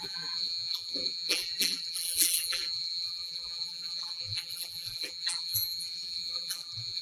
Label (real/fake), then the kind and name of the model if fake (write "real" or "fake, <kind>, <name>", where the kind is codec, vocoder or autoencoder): fake, vocoder, BigVGAN v2